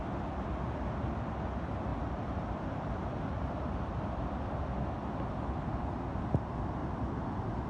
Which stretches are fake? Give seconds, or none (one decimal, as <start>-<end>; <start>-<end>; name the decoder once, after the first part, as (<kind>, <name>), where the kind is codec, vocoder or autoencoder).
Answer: 1.9-5.6 (vocoder, BigVGAN v2); 6.8-7.3